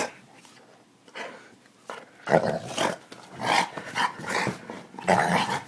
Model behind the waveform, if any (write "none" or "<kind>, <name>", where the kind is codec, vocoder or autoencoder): none